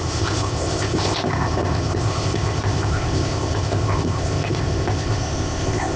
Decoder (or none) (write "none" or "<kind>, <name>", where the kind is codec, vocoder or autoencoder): codec, ZipCodec